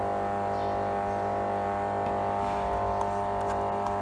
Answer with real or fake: real